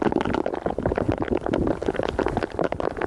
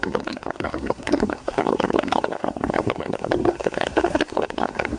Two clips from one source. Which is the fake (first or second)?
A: second